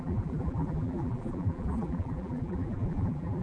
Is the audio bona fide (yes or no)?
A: no